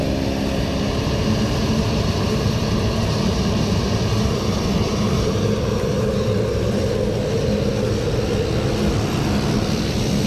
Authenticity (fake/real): real